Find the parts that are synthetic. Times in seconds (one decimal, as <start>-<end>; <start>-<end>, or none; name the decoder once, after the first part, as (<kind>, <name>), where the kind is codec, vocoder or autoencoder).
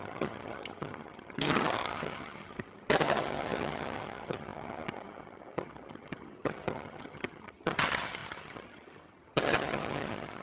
0.0-10.4 (vocoder, HiFi-GAN)